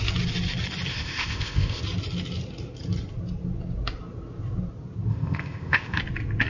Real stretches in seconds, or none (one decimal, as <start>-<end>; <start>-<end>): 0.0-0.9; 1.8-5.1; 6.0-6.5